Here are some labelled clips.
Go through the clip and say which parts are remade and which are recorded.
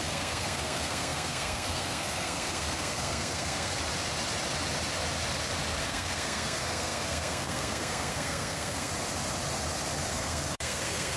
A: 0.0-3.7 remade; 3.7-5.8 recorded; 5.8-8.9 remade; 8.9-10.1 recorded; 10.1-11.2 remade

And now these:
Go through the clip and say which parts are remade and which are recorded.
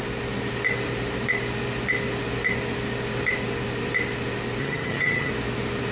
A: 0.0-4.6 recorded; 4.6-5.3 remade; 5.3-5.9 recorded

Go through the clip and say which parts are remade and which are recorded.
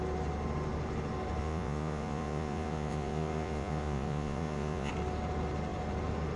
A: 0.0-1.4 recorded; 1.4-4.9 remade; 4.9-6.4 recorded